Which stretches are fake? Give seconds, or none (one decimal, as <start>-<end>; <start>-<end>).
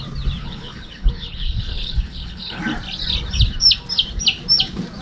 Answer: 0.4-2.6